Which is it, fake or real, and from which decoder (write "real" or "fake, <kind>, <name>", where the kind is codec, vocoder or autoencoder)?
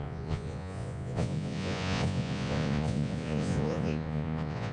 fake, vocoder, Vocos